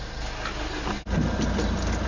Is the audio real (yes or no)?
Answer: yes